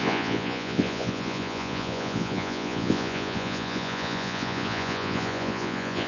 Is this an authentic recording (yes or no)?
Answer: no